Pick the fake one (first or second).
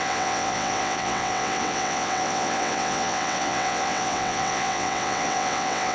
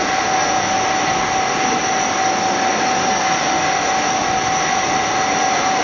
first